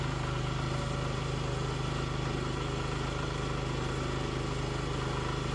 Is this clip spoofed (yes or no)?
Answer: no